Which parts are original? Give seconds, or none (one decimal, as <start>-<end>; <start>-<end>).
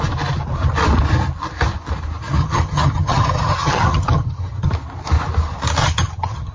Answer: 0.0-2.4; 4.7-5.8